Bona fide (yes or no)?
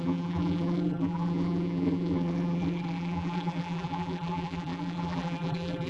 no